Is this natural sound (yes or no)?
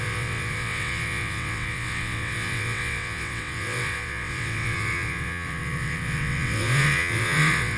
no